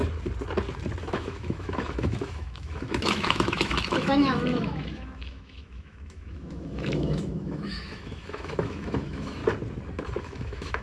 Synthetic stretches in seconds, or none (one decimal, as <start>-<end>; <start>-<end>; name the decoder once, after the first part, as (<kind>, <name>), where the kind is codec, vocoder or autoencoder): 1.0-9.4 (autoencoder, DAC-VAE); 10.2-10.8